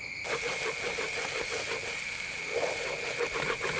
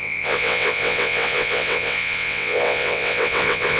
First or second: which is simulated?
second